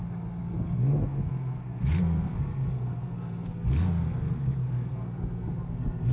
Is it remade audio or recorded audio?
remade